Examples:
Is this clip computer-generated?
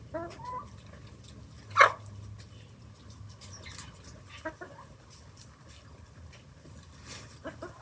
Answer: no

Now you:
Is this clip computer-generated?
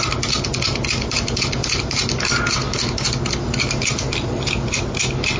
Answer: no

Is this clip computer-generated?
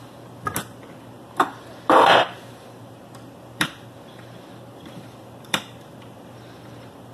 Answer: yes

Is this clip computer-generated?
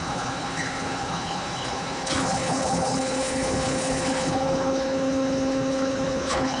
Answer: yes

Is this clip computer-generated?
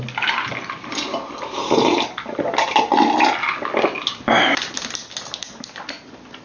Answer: no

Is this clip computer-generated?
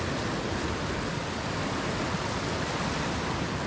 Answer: no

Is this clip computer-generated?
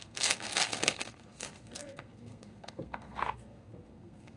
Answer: yes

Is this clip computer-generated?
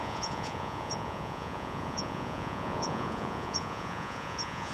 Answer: yes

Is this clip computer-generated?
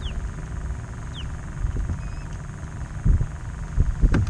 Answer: no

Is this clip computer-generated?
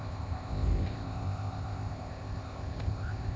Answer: yes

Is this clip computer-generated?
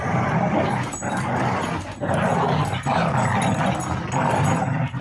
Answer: no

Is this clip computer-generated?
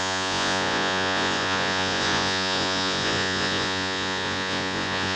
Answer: yes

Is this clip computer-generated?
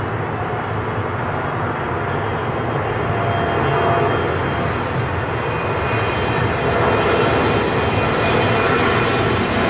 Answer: no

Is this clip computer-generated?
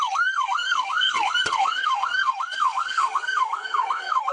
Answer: yes